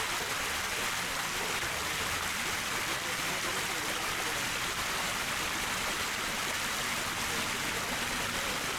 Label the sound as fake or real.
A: real